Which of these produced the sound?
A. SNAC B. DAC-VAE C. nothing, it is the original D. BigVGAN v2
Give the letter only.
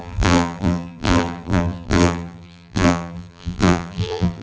D